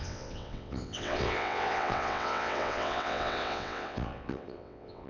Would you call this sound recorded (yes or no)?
no